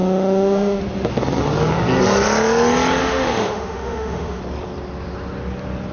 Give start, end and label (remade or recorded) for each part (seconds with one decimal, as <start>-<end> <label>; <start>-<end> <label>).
0.0-0.8 remade; 0.8-3.0 recorded; 3.0-4.4 remade; 4.4-5.9 recorded